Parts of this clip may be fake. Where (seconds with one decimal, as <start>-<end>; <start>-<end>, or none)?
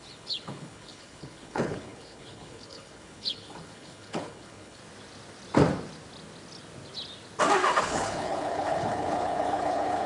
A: 0.0-4.8; 7.8-10.1